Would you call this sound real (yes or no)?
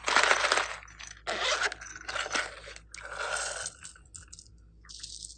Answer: yes